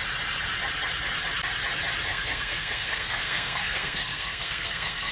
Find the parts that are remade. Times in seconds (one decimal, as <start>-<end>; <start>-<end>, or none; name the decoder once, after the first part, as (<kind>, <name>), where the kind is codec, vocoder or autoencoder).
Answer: 2.1-5.1 (codec, SNAC)